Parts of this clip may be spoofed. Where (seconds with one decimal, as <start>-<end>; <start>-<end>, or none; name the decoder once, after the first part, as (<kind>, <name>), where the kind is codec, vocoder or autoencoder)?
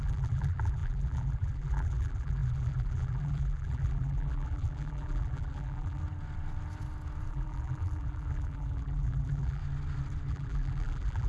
0.0-6.0 (vocoder, BigVGAN v2); 7.3-9.6; 10.3-11.3